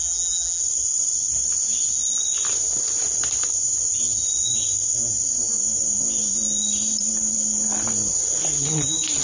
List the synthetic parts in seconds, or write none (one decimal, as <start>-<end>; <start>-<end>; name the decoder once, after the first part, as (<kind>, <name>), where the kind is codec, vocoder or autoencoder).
0.0-0.6 (vocoder, BigVGAN v2)